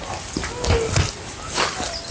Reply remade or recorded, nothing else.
recorded